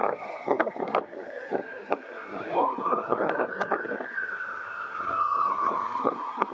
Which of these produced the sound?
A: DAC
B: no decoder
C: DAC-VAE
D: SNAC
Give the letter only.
D